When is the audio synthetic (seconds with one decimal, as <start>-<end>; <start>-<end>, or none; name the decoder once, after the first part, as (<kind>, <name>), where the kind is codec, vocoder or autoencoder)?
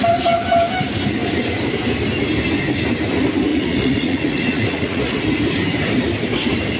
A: 3.5-5.2 (vocoder, Vocos)